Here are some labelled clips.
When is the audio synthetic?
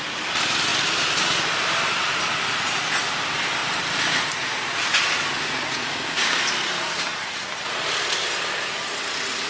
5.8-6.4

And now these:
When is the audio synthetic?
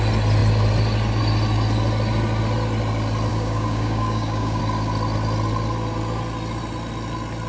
3.3-4.6